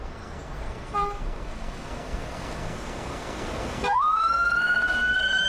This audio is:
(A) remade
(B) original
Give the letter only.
A